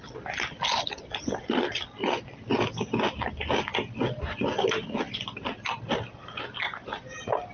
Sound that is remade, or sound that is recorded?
recorded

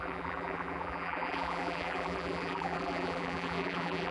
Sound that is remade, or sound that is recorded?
remade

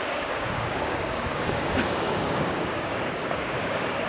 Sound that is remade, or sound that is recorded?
remade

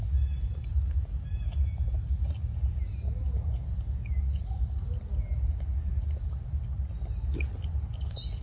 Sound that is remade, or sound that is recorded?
recorded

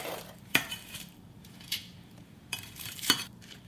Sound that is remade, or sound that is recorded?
remade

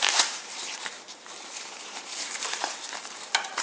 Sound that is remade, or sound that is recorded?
remade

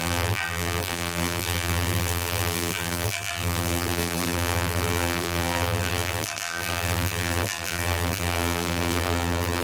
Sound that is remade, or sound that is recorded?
remade